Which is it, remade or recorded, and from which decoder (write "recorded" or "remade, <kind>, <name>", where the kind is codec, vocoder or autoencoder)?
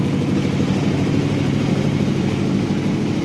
recorded